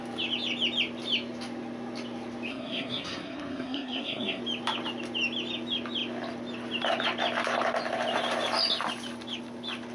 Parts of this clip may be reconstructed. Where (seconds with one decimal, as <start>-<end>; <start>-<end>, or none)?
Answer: 2.5-4.4